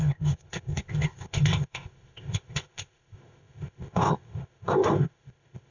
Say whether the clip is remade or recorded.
remade